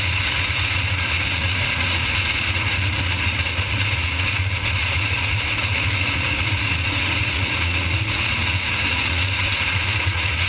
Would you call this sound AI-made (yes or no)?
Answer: yes